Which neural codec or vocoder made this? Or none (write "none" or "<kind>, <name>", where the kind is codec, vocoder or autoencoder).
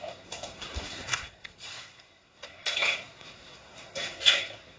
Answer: codec, SNAC